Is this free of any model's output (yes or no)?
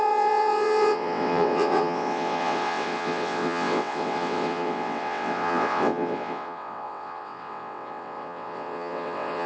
no